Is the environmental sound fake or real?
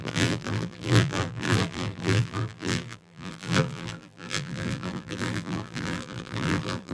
fake